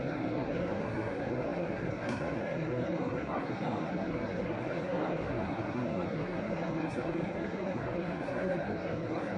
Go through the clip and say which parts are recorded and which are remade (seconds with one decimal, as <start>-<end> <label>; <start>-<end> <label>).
0.0-9.4 remade